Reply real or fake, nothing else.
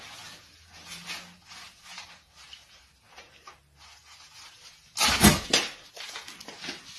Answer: real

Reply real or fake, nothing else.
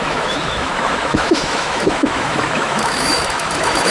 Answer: fake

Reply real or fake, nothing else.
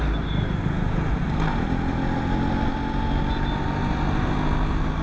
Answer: real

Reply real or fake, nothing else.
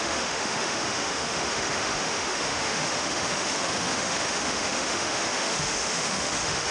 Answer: fake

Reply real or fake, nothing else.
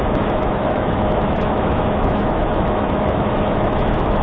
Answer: fake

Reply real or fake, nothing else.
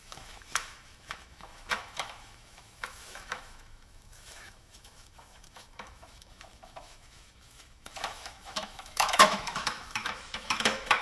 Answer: fake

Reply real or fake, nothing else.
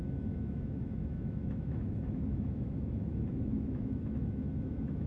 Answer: fake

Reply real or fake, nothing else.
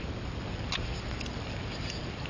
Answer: real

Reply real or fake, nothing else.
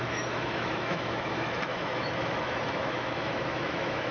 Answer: fake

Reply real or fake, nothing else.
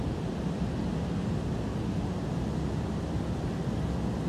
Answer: real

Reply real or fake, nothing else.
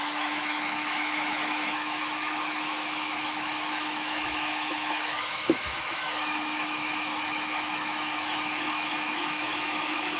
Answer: fake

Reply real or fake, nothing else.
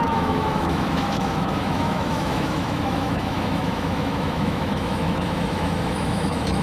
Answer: fake